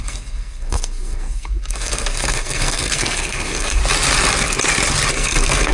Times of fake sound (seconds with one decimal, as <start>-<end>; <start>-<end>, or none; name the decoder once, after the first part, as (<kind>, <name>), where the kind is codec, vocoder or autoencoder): 0.0-3.8 (codec, SNAC); 5.1-5.7